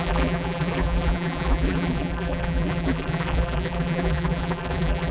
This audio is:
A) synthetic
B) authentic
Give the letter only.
A